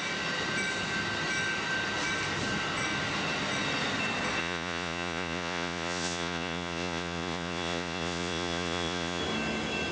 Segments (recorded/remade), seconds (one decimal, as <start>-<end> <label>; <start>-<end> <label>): 0.0-4.4 recorded; 4.4-9.2 remade; 9.2-9.9 recorded